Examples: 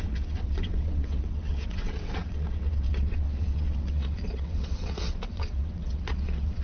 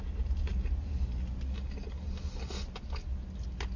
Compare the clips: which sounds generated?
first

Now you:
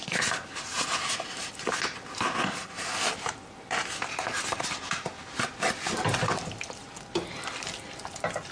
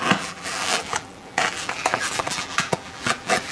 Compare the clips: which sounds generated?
second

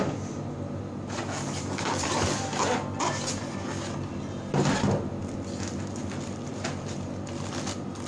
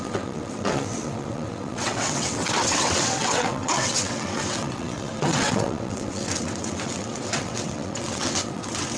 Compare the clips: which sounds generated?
second